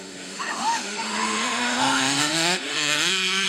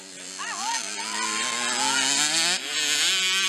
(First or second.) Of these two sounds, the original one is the second